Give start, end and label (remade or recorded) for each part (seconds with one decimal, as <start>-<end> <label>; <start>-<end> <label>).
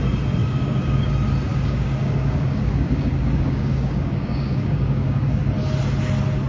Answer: 0.0-0.4 recorded; 0.4-1.1 remade; 1.1-1.5 recorded; 1.5-5.4 remade; 5.4-6.5 recorded